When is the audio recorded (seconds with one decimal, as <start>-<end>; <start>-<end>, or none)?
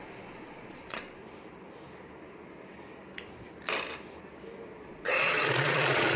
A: 1.2-4.9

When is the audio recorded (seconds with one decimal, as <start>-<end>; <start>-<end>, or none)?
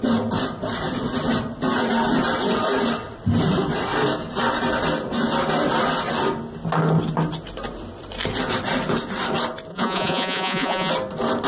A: 0.0-9.7; 10.9-11.5